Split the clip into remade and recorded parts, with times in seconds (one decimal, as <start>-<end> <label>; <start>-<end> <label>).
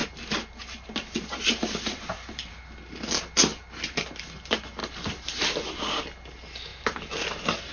0.0-2.5 remade; 2.5-4.8 recorded; 4.8-6.0 remade; 6.0-6.7 recorded; 6.7-7.7 remade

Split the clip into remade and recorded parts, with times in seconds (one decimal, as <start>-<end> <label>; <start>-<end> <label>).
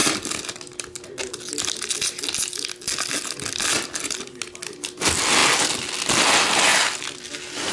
0.0-7.7 recorded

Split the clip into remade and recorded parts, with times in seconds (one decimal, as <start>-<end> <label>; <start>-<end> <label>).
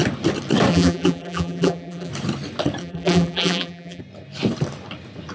0.0-0.7 recorded; 0.7-2.1 remade; 2.1-2.8 recorded; 2.8-4.0 remade; 4.0-5.3 recorded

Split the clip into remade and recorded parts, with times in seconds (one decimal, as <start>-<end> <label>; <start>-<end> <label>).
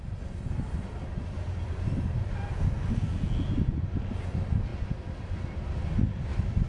0.0-4.7 recorded; 4.7-5.6 remade; 5.6-6.7 recorded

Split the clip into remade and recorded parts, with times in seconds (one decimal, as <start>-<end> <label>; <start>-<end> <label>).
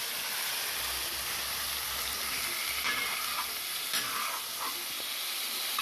0.0-2.6 recorded; 2.6-3.4 remade; 3.4-5.8 recorded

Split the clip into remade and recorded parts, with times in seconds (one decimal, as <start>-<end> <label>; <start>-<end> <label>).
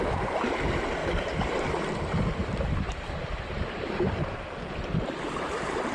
0.0-1.0 recorded; 1.0-1.8 remade; 1.8-2.4 recorded; 2.4-5.9 remade